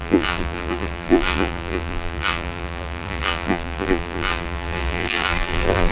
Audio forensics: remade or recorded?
remade